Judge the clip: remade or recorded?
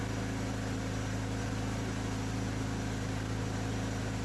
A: recorded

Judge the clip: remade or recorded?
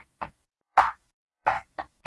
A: remade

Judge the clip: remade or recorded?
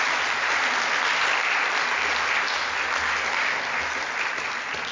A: recorded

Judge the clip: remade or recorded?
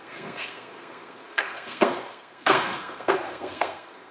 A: remade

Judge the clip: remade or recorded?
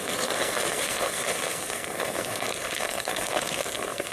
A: remade